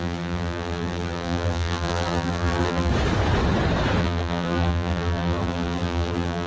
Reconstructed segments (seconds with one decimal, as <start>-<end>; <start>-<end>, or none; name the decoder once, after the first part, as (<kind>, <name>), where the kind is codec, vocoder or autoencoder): 0.0-2.9 (vocoder, BigVGAN v2); 4.0-6.5